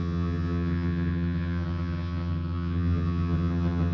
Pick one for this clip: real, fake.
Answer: fake